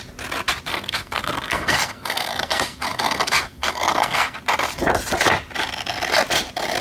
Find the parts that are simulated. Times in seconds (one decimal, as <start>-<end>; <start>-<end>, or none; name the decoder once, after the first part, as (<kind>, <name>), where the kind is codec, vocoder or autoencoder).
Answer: 0.7-4.4 (codec, SNAC)